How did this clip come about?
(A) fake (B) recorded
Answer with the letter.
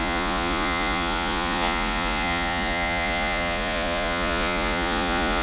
A